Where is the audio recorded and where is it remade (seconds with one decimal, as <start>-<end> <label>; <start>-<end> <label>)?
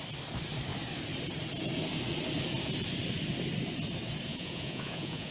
0.0-4.3 recorded; 4.3-5.3 remade